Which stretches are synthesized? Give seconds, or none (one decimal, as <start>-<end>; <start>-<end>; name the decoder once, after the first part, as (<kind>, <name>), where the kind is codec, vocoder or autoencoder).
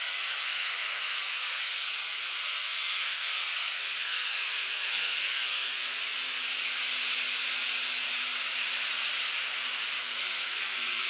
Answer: 0.0-5.9 (codec, SNAC); 10.0-11.1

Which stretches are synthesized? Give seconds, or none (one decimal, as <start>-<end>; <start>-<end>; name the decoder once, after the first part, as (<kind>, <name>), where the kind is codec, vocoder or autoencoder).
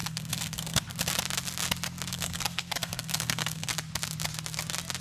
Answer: 0.0-0.8 (codec, SNAC); 2.1-3.7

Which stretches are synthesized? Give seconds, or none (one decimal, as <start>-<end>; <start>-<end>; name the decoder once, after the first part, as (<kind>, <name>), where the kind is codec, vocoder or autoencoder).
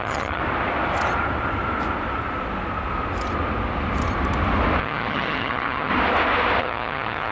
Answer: 0.0-0.4 (vocoder, HiFi-GAN); 4.8-5.9; 6.6-7.3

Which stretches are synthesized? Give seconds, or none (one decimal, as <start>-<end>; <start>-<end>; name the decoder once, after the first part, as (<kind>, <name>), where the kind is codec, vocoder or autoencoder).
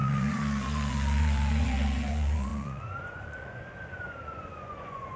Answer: 0.0-5.2 (vocoder, Vocos)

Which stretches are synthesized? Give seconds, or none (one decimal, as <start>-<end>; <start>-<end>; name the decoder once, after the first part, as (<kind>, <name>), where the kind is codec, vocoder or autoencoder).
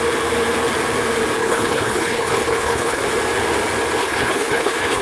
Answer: 1.4-3.0 (codec, HILCodec); 4.0-5.0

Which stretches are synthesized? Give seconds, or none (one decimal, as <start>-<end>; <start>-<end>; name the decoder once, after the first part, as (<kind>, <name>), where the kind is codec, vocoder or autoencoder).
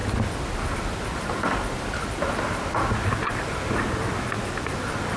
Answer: none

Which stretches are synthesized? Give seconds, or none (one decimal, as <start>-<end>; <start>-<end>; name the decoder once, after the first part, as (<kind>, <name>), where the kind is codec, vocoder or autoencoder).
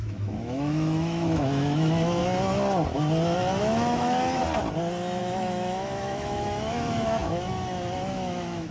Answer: 0.0-2.2 (autoencoder, DAC-VAE); 3.6-4.4; 5.2-8.7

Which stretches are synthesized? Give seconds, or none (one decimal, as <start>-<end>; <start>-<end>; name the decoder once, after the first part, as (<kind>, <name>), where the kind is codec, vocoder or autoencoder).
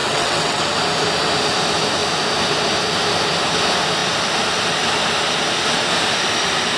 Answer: 0.0-0.6 (vocoder, WaveNeXt)